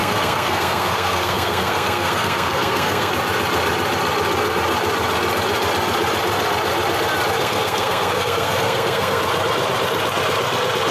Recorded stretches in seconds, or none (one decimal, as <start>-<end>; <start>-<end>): 3.1-7.4; 9.2-10.9